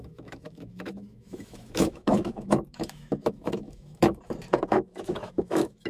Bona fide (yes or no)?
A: no